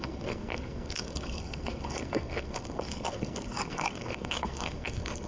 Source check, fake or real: fake